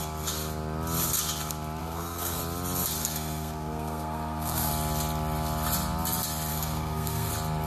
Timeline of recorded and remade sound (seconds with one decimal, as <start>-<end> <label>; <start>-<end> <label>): 0.0-1.8 recorded; 1.8-2.4 remade; 2.4-3.0 recorded; 3.0-4.7 remade; 4.7-6.5 recorded; 6.5-7.3 remade; 7.3-7.7 recorded